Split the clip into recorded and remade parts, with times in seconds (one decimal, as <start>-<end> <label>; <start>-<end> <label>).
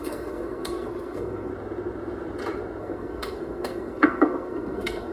0.0-1.5 remade; 1.5-2.8 recorded; 2.8-5.1 remade